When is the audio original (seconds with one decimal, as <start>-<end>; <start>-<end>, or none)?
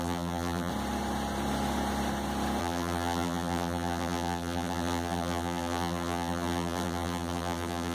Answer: 0.7-2.6